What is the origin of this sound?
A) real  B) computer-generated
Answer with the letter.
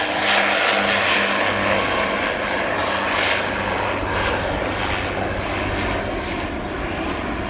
A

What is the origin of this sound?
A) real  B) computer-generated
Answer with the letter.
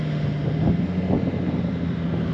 A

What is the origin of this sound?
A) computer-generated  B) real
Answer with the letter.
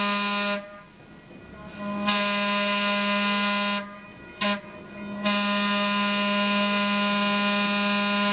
B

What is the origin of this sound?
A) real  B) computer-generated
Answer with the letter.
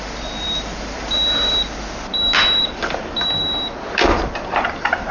B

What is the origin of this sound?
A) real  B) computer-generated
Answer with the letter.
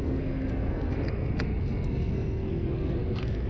B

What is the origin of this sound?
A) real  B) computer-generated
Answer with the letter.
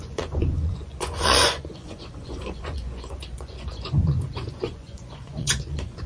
B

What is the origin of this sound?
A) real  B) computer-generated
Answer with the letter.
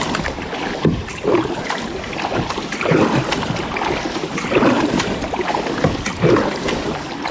A